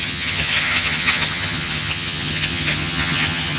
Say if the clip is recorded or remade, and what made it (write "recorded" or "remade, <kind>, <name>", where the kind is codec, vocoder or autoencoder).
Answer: remade, vocoder, HiFi-GAN